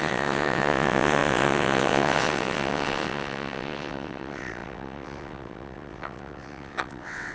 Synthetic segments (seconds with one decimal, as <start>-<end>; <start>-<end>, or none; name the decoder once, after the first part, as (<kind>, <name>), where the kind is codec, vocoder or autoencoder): 0.0-7.3 (vocoder, WaveNeXt)